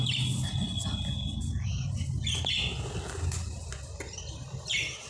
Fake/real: real